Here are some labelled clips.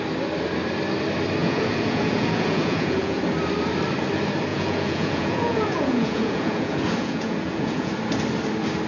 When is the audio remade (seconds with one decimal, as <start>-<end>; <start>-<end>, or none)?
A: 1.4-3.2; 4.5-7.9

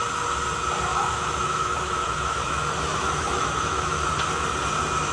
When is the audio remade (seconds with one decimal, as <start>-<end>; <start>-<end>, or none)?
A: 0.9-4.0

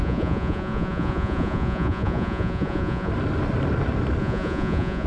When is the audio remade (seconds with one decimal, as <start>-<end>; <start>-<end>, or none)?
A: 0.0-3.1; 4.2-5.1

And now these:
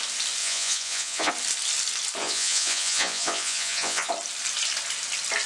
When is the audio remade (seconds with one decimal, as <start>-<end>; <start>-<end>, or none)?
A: 0.4-1.3; 2.2-4.1

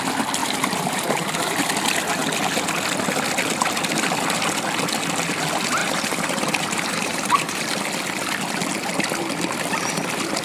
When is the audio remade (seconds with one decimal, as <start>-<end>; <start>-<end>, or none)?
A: 0.4-1.7; 5.8-7.8